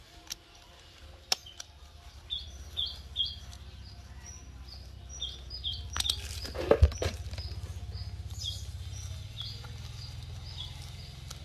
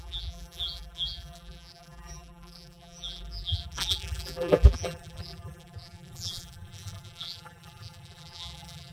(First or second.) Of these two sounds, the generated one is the second